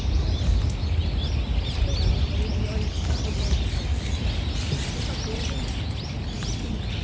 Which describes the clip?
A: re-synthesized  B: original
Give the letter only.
B